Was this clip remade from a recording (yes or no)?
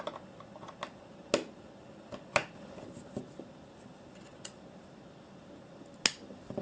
no